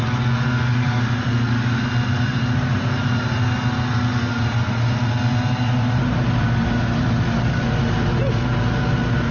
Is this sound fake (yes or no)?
no